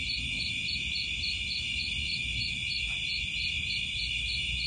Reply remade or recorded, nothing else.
recorded